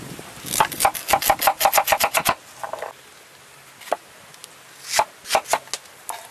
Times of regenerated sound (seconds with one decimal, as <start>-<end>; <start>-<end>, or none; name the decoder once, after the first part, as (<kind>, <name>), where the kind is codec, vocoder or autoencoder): none